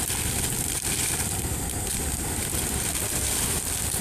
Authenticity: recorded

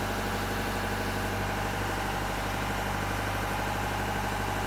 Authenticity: recorded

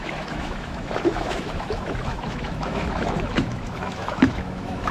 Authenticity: remade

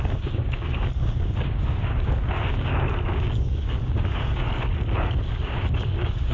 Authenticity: remade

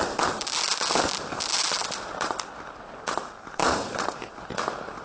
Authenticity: recorded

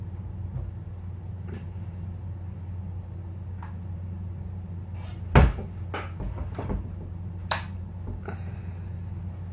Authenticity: recorded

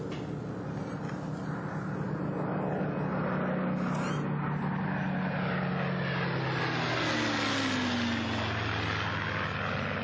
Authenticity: recorded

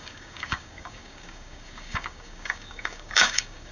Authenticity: remade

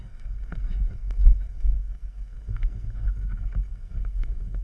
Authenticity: remade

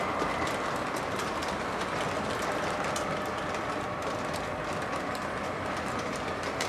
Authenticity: recorded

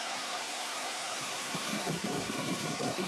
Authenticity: remade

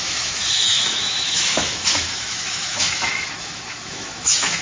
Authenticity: remade